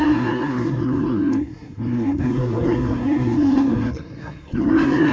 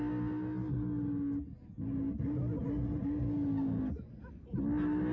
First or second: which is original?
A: second